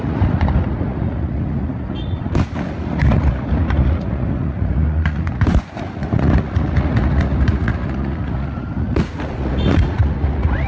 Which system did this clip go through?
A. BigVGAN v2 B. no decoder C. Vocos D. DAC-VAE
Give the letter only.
C